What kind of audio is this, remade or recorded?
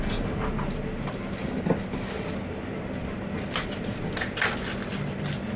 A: recorded